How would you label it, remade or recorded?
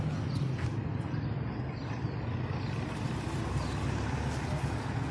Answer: recorded